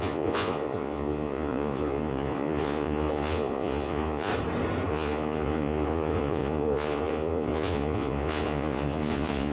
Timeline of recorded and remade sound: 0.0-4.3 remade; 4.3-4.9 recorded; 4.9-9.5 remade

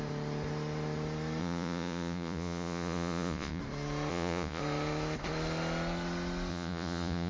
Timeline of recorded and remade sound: 0.0-1.4 recorded; 1.4-3.6 remade; 3.6-4.1 recorded; 4.1-4.6 remade; 4.6-6.5 recorded; 6.5-7.3 remade